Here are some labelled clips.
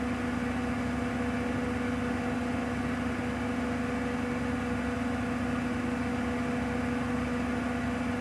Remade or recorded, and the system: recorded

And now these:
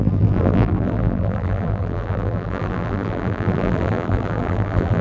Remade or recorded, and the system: remade, vocoder, BigVGAN v2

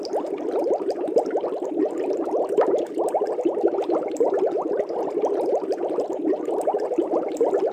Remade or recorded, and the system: remade, vocoder, BigVGAN v2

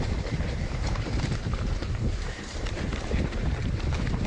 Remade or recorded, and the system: remade, vocoder, BigVGAN v2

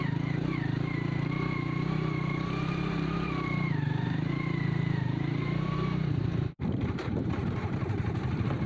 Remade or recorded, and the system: remade, vocoder, BigVGAN v2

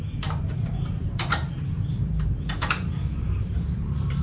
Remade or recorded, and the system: remade, vocoder, BigVGAN v2